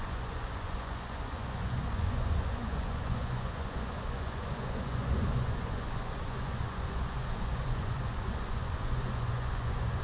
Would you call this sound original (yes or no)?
no